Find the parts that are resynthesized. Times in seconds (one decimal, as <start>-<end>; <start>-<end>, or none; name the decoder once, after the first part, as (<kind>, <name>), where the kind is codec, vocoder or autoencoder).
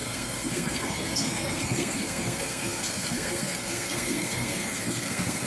0.0-5.5 (codec, SNAC)